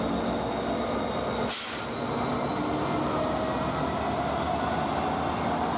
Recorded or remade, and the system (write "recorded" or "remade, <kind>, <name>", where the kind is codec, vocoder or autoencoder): recorded